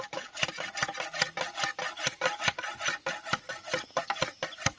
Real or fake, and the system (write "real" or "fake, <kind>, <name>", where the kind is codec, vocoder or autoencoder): real